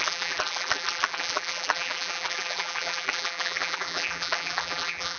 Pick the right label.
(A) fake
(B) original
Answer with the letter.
A